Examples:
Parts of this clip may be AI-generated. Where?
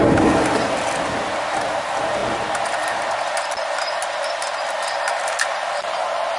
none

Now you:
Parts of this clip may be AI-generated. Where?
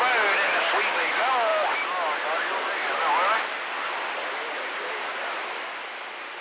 none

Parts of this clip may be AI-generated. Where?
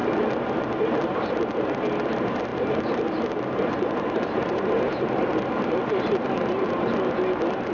0.8-7.7 (vocoder, BigVGAN v2)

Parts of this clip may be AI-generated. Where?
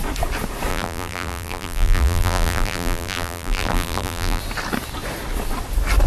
0.7-4.4 (vocoder, BigVGAN v2)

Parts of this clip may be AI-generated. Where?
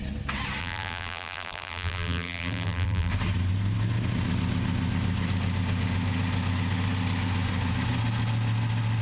0.6-3.1 (vocoder, BigVGAN v2)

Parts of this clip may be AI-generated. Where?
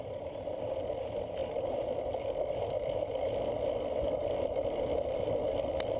1.4-4.3 (vocoder, BigVGAN v2)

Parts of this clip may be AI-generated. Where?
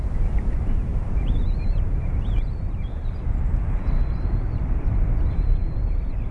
0.0-6.3 (vocoder, BigVGAN v2)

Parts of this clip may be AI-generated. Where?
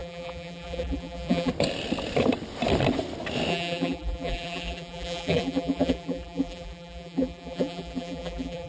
0.0-1.5 (vocoder, BigVGAN v2); 3.5-8.7